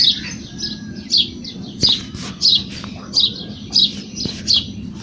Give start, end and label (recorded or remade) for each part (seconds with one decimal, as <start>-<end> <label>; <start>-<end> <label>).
0.0-5.0 recorded